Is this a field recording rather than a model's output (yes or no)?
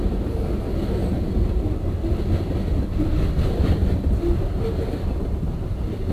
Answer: yes